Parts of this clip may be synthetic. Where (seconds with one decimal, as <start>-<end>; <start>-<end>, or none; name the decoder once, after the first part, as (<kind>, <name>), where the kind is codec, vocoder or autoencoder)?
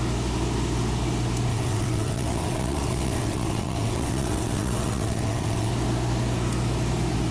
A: 1.5-5.7 (vocoder, WaveNeXt)